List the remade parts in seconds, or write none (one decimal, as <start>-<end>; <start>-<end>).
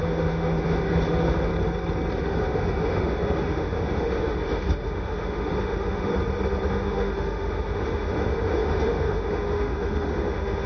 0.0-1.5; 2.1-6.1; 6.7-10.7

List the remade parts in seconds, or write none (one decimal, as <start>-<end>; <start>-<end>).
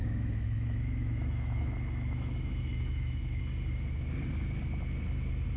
0.0-3.4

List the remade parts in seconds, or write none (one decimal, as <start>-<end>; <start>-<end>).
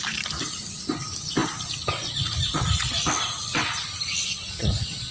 none